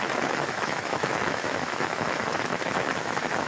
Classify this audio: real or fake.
fake